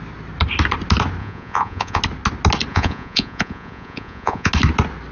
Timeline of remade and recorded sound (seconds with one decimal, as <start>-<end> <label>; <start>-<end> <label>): 0.0-1.2 recorded; 1.2-2.0 remade; 2.0-2.7 recorded; 2.7-4.5 remade; 4.5-5.1 recorded